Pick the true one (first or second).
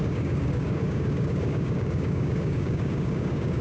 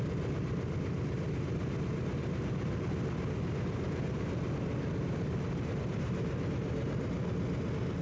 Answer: second